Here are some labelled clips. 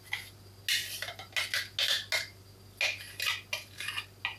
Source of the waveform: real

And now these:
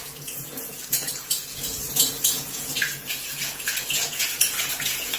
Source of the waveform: fake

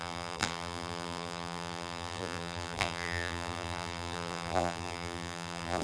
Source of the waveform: fake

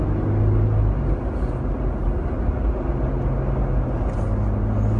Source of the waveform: real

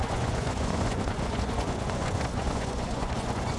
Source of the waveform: fake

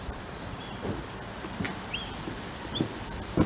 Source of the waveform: real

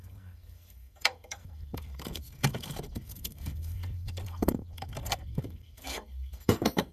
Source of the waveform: fake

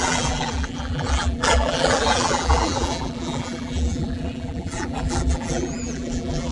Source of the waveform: fake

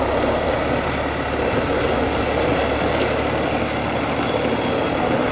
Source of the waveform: real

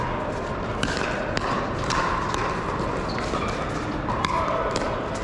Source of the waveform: real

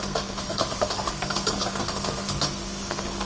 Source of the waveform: fake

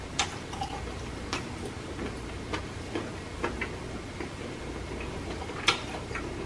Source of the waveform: real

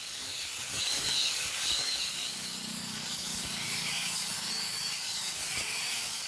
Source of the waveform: fake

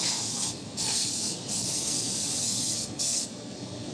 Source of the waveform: fake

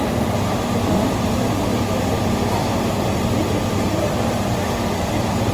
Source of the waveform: real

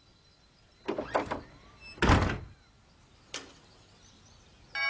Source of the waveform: real